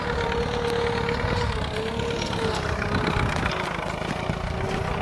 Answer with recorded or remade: recorded